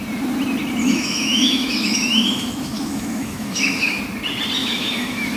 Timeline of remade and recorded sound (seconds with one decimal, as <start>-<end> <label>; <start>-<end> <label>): 0.0-0.8 recorded; 0.8-4.0 remade; 4.0-4.6 recorded; 4.6-5.4 remade